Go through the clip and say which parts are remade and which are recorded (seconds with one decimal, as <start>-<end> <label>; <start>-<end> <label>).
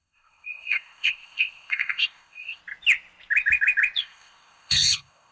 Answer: 0.0-2.6 remade; 2.6-4.0 recorded; 4.0-5.3 remade